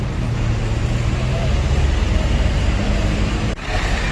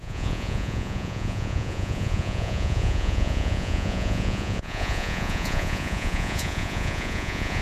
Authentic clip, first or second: first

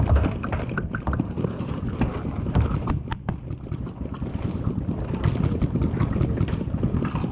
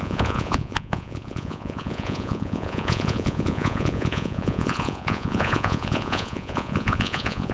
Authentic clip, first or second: first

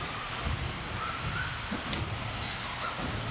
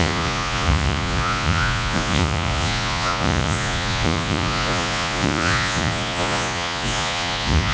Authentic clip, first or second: first